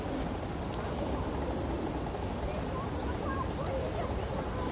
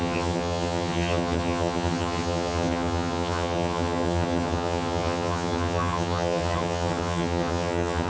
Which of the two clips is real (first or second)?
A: first